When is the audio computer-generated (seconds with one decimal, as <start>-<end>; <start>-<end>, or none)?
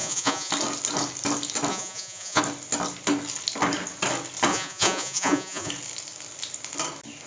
0.0-0.5; 1.7-2.4; 4.5-5.7